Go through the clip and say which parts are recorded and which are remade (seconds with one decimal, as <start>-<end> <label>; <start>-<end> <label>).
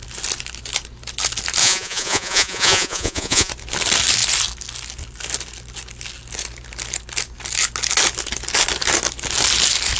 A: 0.0-1.6 recorded; 1.6-3.5 remade; 3.5-10.0 recorded